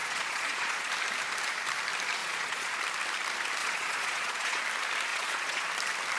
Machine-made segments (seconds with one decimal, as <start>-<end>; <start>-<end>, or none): 0.0-0.9; 2.2-2.8; 3.6-4.6; 5.1-5.6